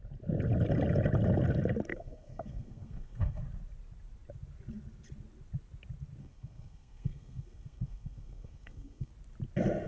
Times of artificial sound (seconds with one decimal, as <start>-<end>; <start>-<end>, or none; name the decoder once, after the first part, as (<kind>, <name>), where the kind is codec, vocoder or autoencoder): 1.9-3.4 (codec, SNAC); 6.2-9.1